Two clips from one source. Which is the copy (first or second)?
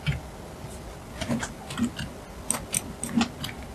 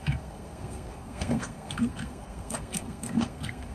second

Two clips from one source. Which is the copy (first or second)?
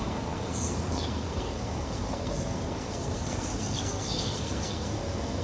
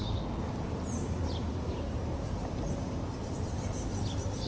first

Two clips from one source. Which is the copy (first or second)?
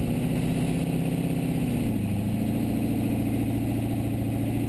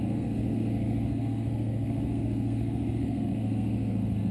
second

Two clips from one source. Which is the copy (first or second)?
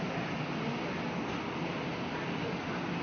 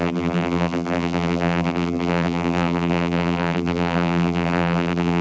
second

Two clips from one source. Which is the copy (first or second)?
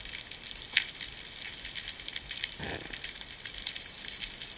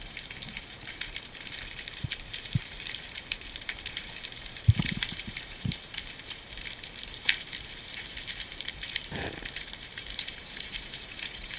second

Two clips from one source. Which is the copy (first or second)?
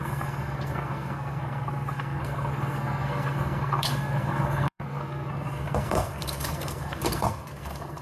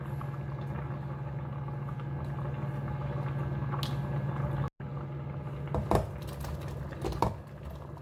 first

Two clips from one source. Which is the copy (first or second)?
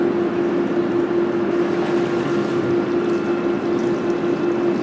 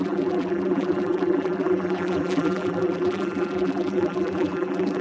second